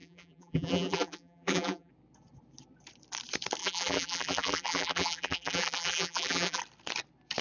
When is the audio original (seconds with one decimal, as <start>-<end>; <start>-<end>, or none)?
1.9-3.6; 6.6-7.4